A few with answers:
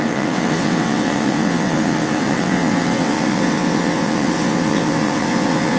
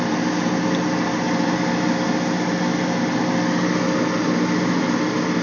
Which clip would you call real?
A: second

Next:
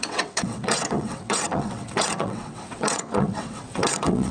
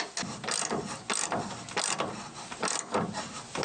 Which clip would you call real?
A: second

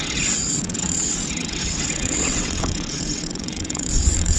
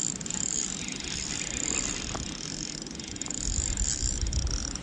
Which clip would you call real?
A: second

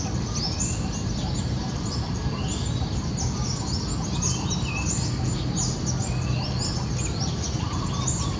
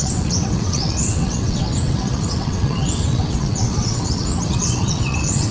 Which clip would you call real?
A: first